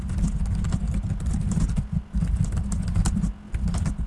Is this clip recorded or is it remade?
recorded